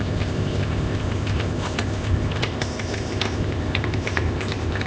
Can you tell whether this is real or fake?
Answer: fake